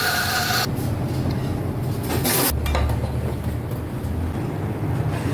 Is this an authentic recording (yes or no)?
yes